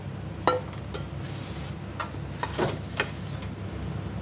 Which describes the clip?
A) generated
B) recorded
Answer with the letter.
B